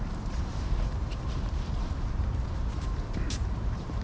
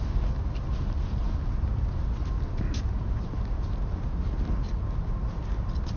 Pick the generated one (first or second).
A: first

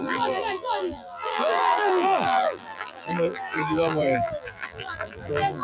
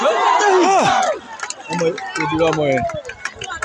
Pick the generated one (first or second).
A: first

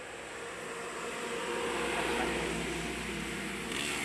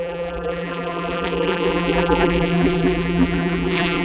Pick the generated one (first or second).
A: second